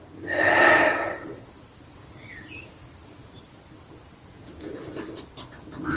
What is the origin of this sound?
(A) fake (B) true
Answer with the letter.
B